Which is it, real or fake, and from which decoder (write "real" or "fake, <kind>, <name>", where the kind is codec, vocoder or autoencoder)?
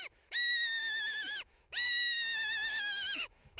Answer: fake, autoencoder, DAC-VAE